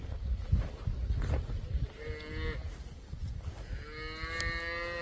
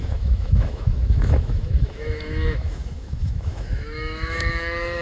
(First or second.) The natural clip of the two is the first